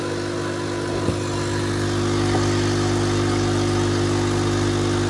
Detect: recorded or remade recorded